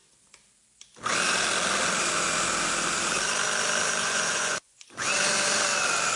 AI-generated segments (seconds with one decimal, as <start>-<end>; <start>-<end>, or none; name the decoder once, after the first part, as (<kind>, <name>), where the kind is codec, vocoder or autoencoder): 4.0-5.1 (vocoder, Vocos)